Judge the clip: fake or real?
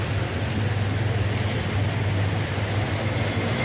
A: real